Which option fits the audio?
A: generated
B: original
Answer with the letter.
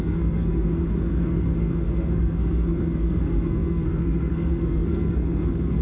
A